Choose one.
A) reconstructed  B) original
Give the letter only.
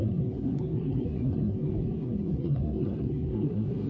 A